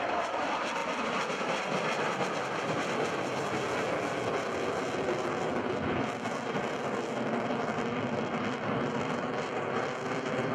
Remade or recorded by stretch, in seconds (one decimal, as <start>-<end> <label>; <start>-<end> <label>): 0.0-0.8 remade; 0.8-5.4 recorded; 5.4-10.5 remade